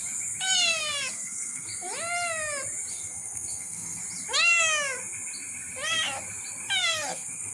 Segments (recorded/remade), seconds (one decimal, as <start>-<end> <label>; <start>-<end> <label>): 0.0-1.1 recorded; 1.1-1.7 remade; 1.7-2.9 recorded; 2.9-4.0 remade; 4.0-6.8 recorded; 6.8-7.5 remade